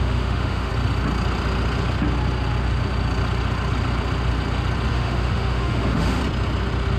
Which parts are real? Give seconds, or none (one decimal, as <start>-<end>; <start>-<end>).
0.7-4.9; 6.2-7.0